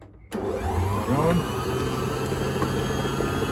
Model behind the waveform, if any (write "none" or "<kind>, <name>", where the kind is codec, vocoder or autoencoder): none